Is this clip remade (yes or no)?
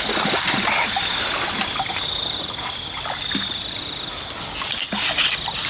no